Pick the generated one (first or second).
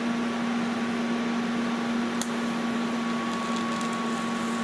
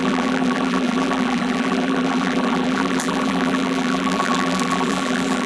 second